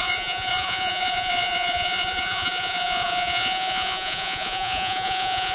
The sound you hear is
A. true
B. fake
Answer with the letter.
B